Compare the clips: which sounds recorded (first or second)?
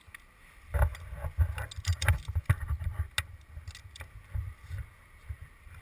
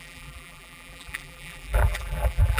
first